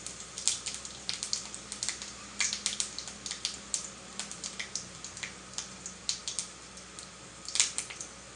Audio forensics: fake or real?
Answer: real